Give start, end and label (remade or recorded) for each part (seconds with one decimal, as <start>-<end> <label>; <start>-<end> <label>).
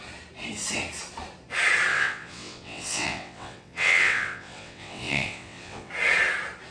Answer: 0.0-1.9 recorded; 1.9-5.9 remade; 5.9-6.7 recorded